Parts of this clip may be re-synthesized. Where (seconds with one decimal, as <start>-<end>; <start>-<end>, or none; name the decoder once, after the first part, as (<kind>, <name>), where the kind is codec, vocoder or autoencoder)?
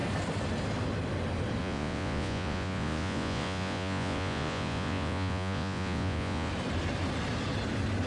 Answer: 1.6-6.5 (vocoder, Vocos)